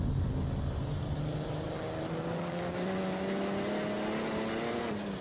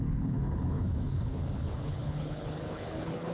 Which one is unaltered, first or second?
first